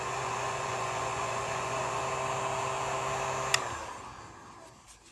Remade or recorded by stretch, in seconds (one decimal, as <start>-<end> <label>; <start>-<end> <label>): 0.0-2.0 remade; 2.0-5.1 recorded